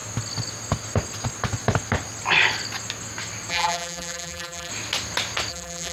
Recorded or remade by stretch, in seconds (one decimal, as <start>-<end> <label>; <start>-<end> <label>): 0.0-3.5 recorded; 3.5-4.7 remade; 4.7-5.5 recorded; 5.5-5.9 remade